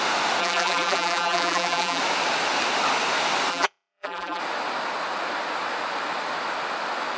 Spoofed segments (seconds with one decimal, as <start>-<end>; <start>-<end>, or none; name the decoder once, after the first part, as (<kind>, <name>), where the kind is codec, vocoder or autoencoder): 0.4-2.0 (vocoder, BigVGAN v2); 3.5-4.4